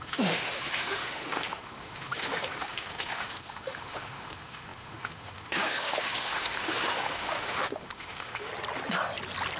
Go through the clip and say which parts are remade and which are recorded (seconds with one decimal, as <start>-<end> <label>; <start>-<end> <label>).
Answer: 0.0-8.5 remade; 8.5-9.6 recorded